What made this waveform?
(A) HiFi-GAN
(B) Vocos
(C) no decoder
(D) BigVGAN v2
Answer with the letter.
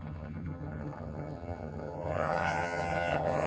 A